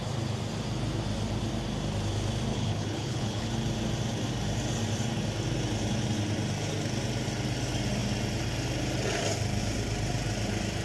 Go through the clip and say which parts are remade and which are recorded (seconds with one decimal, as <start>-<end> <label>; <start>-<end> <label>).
0.0-2.5 recorded; 2.5-3.5 remade; 3.5-10.8 recorded